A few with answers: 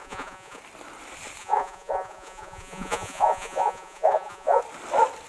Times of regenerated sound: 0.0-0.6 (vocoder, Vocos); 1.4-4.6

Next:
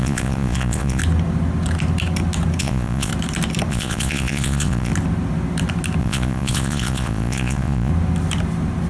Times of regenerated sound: 0.0-1.0 (vocoder, Vocos); 2.6-3.1; 3.7-4.9; 6.0-7.9

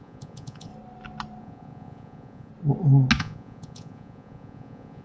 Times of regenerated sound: 0.0-0.7 (vocoder, Vocos); 1.4-2.5; 3.2-5.0

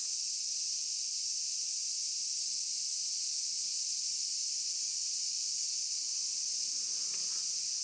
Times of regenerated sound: none

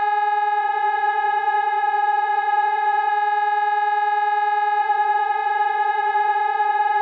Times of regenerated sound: 0.6-3.1 (vocoder, Vocos); 4.8-7.0

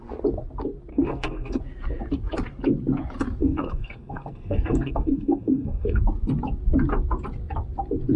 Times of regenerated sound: 0.9-1.6 (codec, SNAC); 3.4-6.0

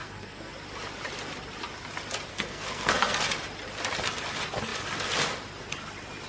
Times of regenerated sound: 0.0-0.5 (codec, SNAC); 2.3-3.2